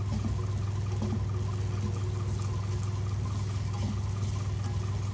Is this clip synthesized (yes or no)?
no